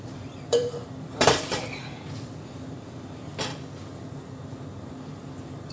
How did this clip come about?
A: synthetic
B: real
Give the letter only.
A